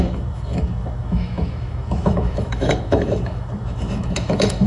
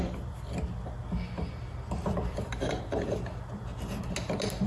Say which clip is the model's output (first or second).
first